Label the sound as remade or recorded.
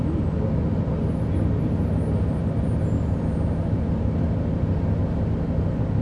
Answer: recorded